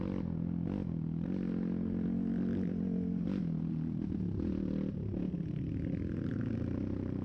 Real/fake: real